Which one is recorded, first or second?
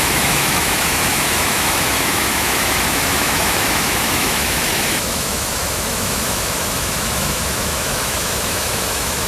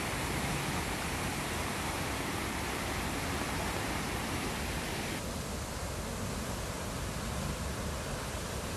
second